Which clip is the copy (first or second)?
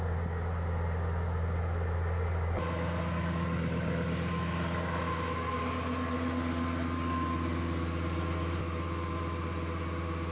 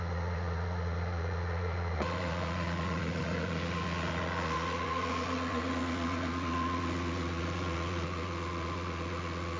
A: second